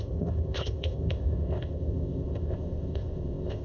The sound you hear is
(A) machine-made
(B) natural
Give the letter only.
A